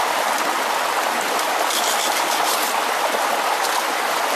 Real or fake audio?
real